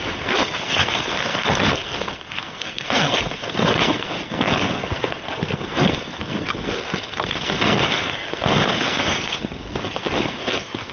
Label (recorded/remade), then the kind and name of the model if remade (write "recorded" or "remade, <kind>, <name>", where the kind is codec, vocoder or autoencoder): remade, codec, SNAC